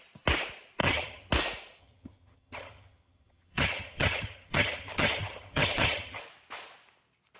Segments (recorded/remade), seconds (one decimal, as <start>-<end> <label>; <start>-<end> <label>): 0.0-0.8 recorded; 0.8-1.3 remade; 1.3-1.8 recorded; 1.8-6.2 remade; 6.2-7.4 recorded